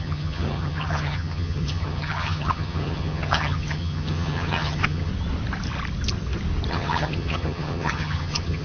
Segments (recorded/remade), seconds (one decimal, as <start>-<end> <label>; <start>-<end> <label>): 0.0-5.1 remade; 5.1-6.7 recorded; 6.7-8.6 remade